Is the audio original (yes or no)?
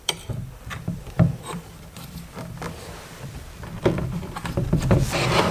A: no